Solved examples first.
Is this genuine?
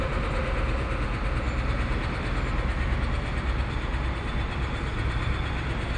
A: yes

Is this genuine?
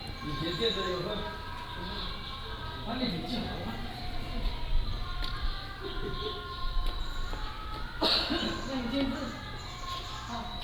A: yes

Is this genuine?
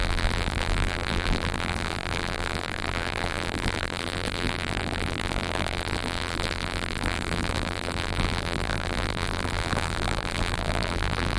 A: no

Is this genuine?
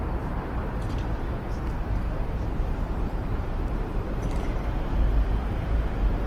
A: no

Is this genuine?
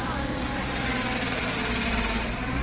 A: no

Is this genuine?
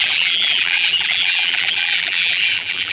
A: no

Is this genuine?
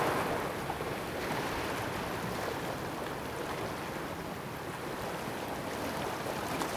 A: yes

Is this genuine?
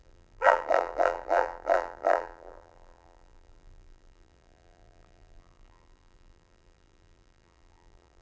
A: no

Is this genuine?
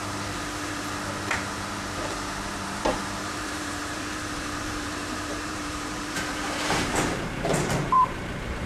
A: no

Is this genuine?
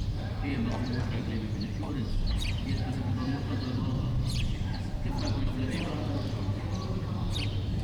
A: no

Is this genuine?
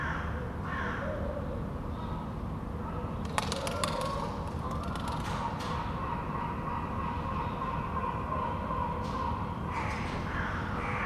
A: yes